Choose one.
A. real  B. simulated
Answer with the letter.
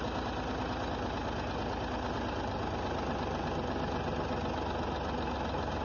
A